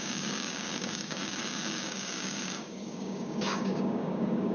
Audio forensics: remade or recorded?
remade